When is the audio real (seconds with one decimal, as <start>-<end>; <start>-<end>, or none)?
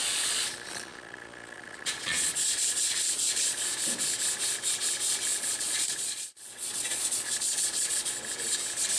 3.6-5.3; 8.1-9.0